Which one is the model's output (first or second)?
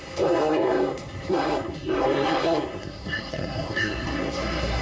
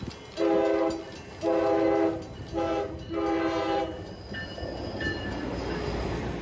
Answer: first